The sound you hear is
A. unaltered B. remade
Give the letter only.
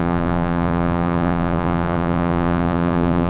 B